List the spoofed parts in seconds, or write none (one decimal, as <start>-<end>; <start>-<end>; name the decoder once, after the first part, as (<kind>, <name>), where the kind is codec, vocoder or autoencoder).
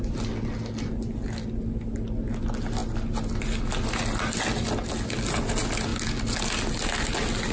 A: none